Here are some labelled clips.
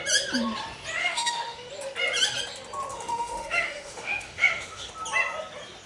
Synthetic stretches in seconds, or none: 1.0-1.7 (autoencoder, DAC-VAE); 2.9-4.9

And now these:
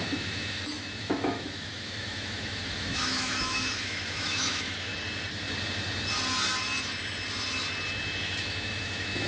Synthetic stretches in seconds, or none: 0.0-4.9 (autoencoder, DAC-VAE); 8.2-9.3